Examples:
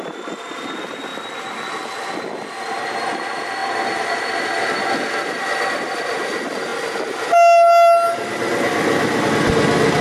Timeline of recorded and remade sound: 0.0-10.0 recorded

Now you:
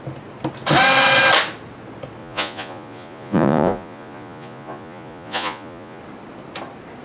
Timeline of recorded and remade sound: 0.0-2.2 recorded; 2.2-6.0 remade; 6.0-7.0 recorded

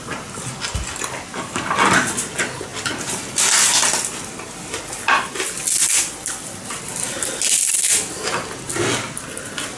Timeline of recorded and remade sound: 0.0-9.8 recorded

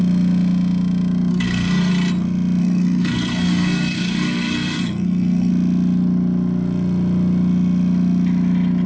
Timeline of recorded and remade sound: 0.0-1.3 recorded; 1.3-1.9 remade; 1.9-2.6 recorded; 2.6-5.5 remade; 5.5-8.9 recorded